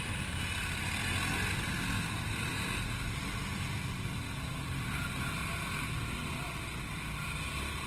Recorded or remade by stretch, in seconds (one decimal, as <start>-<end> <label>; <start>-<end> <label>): 0.0-7.9 recorded